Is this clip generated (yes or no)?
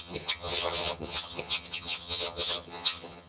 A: yes